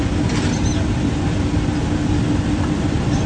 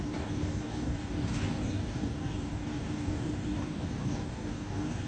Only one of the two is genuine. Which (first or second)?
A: first